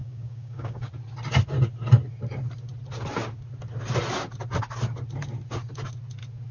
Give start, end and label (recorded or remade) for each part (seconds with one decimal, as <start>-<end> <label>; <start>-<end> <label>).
0.0-0.9 remade; 0.9-6.5 recorded